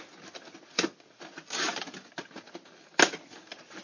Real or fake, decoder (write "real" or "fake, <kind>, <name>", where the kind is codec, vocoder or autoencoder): real